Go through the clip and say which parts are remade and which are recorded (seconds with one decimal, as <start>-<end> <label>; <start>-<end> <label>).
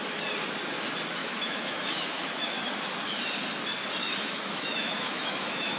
0.0-1.2 recorded; 1.2-2.7 remade; 2.7-4.0 recorded; 4.0-5.8 remade